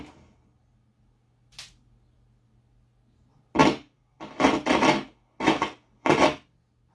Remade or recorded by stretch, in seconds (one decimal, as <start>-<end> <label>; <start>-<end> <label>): 0.0-6.9 recorded